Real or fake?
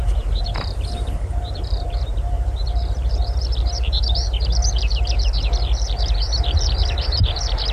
fake